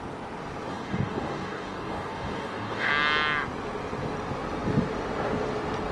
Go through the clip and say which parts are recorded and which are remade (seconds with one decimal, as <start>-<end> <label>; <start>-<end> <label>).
0.0-0.7 recorded; 0.7-2.9 remade; 2.9-5.9 recorded